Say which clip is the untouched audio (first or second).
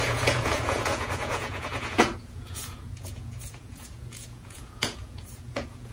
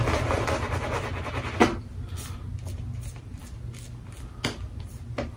second